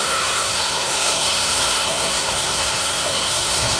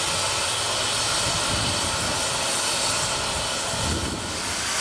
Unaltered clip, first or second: second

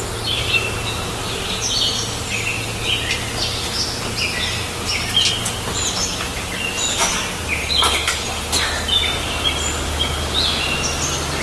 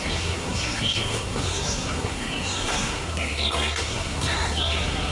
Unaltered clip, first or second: first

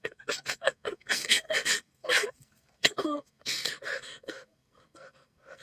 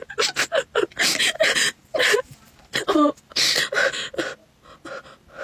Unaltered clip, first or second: second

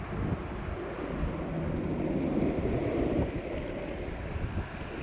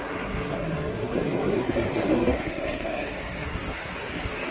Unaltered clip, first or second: first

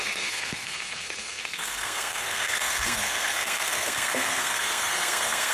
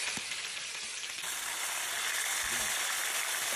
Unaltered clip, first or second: second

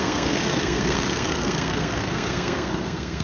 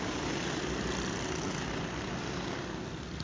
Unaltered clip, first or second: second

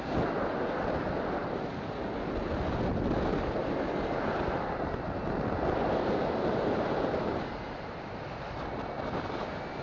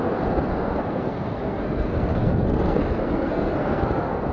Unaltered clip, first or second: first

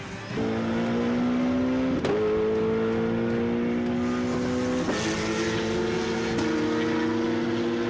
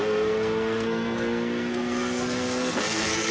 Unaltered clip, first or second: first